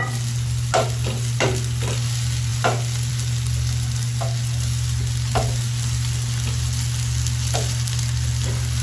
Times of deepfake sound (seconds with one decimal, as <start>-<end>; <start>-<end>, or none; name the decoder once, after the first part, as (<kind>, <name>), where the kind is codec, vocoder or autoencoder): none